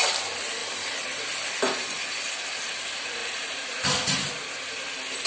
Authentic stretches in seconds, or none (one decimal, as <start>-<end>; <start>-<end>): 0.0-0.6; 1.9-3.2; 4.3-5.3